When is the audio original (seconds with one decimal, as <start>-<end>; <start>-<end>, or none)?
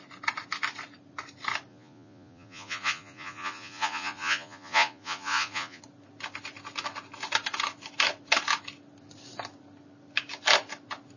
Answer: 0.0-1.7; 5.8-11.2